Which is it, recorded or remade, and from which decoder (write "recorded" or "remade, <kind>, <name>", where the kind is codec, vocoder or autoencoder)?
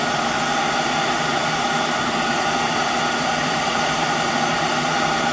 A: recorded